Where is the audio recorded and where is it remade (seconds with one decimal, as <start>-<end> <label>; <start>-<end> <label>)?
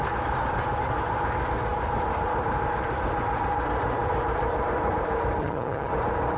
0.0-5.4 recorded; 5.4-5.9 remade; 5.9-6.4 recorded